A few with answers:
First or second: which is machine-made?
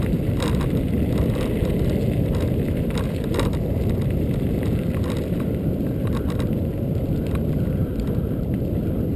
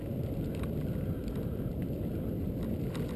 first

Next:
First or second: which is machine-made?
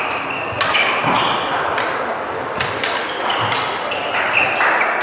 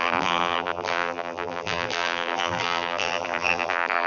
second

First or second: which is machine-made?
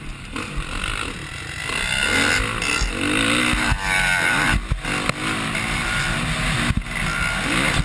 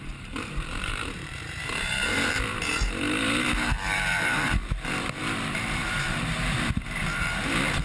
second